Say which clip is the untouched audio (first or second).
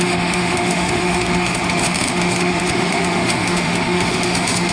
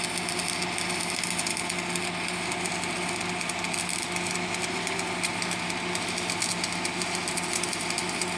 second